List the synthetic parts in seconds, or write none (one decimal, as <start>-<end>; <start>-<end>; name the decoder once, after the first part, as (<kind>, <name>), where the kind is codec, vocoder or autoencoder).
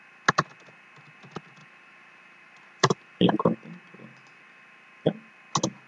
1.6-3.4 (vocoder, BigVGAN v2)